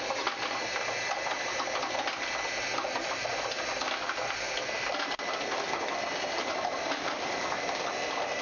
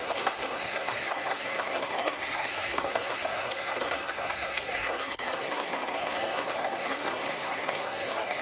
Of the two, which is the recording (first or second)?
first